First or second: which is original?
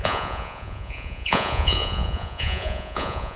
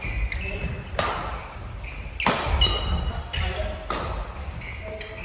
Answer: second